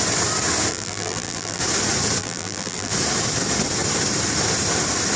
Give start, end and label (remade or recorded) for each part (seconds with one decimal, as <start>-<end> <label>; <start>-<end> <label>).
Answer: 0.0-0.7 recorded; 0.7-1.6 remade; 1.6-2.2 recorded; 2.2-2.9 remade; 2.9-5.2 recorded

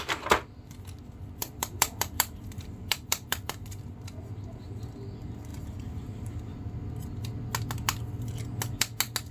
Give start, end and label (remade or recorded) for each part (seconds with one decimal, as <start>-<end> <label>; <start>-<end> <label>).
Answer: 0.0-1.4 recorded; 1.4-4.8 remade; 4.8-5.5 recorded; 5.5-6.7 remade; 6.7-9.3 recorded

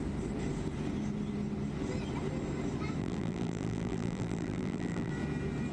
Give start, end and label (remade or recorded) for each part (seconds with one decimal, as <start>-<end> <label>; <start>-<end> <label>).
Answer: 0.0-3.0 recorded; 3.0-5.1 remade; 5.1-5.7 recorded

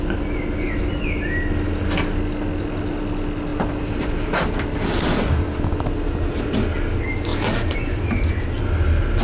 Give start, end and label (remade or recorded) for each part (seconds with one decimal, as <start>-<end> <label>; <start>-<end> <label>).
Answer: 0.0-3.5 recorded; 3.5-5.2 remade; 5.2-7.3 recorded; 7.3-8.4 remade; 8.4-9.2 recorded

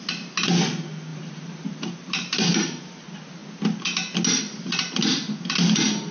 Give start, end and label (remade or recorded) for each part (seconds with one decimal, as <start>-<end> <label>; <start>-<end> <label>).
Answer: 0.0-1.1 recorded; 1.1-2.8 remade; 2.8-6.1 recorded

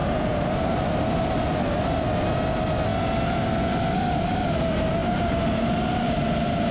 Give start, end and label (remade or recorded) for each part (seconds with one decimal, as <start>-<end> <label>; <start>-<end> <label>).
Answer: 0.0-1.2 remade; 1.2-5.0 recorded; 5.0-6.7 remade